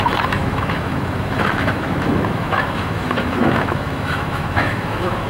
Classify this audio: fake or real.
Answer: fake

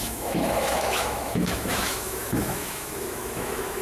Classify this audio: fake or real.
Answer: fake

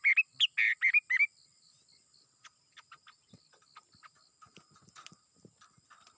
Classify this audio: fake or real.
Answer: real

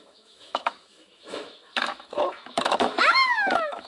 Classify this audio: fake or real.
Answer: fake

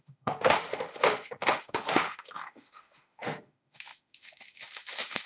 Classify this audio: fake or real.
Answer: fake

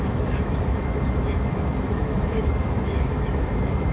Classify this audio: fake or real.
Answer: fake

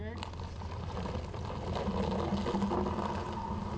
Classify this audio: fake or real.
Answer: real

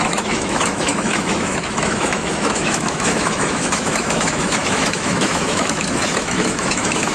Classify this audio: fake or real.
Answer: fake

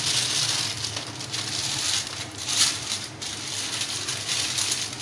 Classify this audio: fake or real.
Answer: real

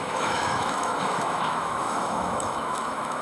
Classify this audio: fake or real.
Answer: fake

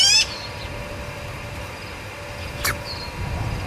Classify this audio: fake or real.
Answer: real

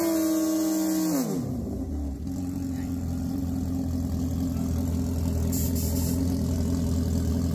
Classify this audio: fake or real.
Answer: real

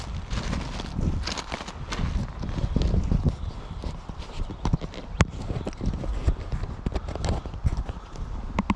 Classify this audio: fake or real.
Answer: real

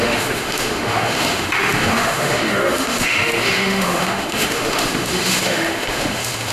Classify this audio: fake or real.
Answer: fake